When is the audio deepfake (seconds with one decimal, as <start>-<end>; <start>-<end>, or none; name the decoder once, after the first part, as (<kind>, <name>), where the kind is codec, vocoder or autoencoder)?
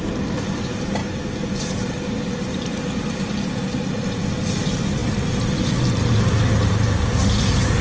none